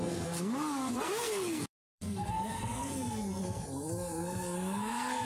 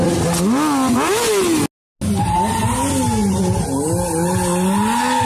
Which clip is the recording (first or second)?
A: second